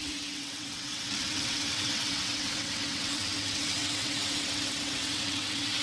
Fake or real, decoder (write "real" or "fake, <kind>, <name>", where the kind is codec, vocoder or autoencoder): fake, vocoder, WaveNeXt